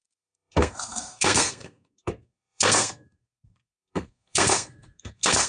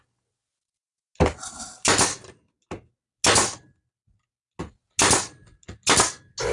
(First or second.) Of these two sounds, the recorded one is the second